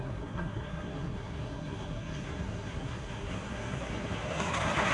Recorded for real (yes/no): no